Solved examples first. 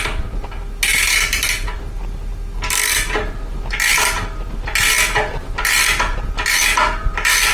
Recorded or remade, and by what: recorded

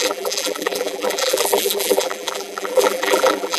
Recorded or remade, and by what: remade, vocoder, BigVGAN v2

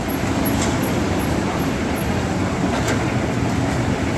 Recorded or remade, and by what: recorded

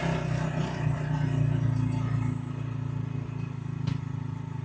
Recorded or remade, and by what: recorded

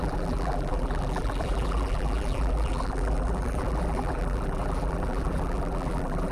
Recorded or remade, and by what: remade, vocoder, BigVGAN v2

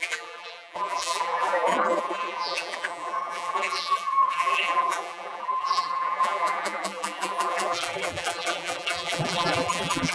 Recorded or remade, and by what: remade, vocoder, BigVGAN v2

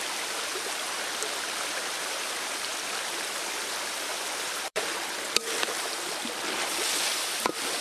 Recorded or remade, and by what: remade, vocoder, BigVGAN v2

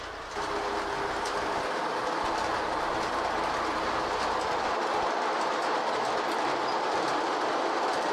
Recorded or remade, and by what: recorded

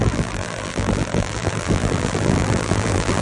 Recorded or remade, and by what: remade, vocoder, BigVGAN v2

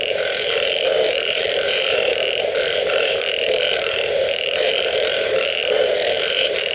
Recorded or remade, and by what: remade, vocoder, BigVGAN v2